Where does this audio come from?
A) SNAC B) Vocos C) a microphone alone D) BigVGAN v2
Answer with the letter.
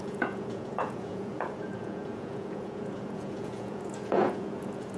B